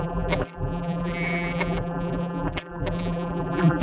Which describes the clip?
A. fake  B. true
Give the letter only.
A